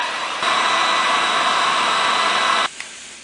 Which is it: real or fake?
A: real